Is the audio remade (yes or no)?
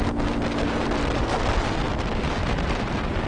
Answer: no